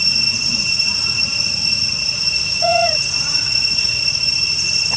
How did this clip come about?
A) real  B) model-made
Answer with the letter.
B